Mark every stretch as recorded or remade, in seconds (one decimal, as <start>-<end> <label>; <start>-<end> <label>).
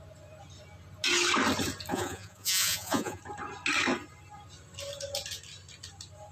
0.0-1.9 recorded; 1.9-3.2 remade; 3.2-6.3 recorded